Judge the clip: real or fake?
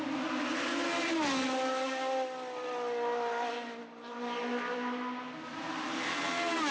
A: real